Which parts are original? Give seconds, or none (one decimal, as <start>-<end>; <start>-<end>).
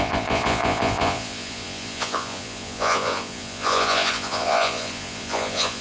none